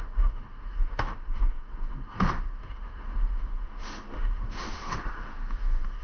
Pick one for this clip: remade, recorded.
remade